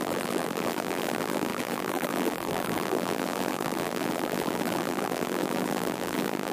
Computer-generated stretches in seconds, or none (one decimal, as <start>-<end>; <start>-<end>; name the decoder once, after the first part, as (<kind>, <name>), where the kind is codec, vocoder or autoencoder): 0.0-6.5 (vocoder, BigVGAN v2)